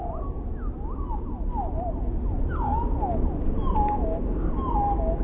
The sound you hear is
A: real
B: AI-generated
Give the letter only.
A